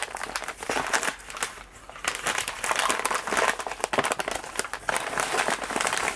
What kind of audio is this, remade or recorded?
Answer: recorded